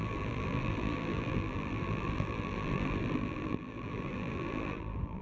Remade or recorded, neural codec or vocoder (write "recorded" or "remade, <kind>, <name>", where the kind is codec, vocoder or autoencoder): remade, vocoder, BigVGAN v2